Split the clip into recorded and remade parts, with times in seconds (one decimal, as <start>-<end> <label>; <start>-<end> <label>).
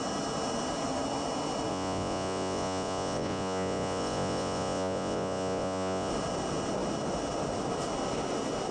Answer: 0.0-1.7 recorded; 1.7-6.1 remade; 6.1-8.7 recorded